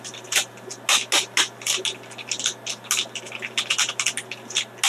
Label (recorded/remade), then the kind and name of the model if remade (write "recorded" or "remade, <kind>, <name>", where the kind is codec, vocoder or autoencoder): recorded